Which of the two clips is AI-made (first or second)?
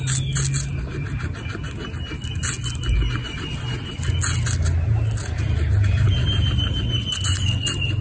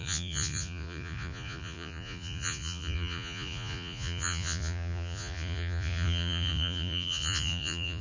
second